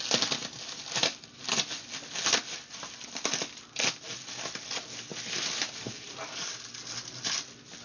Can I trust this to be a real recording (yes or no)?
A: yes